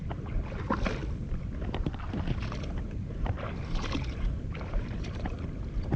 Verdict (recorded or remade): recorded